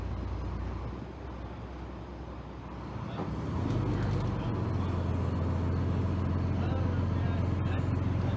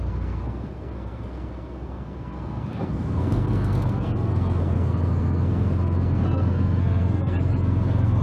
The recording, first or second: first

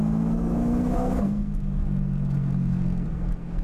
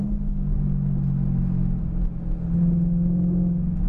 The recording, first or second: second